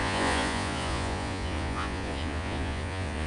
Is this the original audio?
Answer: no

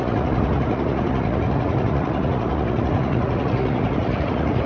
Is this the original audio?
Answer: no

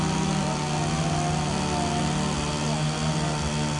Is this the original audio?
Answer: yes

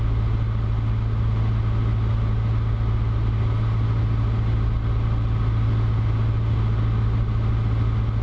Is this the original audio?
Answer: yes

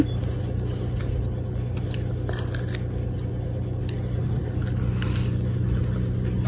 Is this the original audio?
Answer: yes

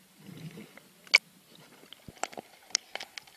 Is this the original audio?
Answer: yes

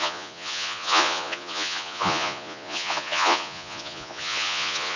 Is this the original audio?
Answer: no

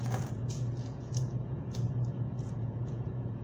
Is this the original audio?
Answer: no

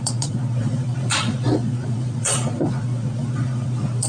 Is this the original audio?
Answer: no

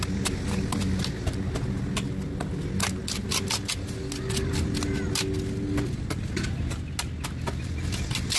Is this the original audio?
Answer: yes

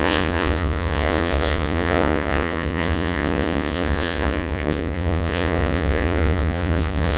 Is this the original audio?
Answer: no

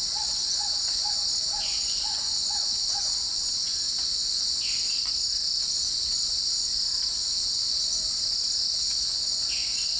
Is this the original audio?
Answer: no